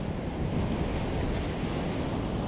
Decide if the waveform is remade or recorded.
recorded